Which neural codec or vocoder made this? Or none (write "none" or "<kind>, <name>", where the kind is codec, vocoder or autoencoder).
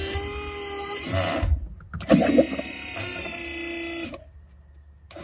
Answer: none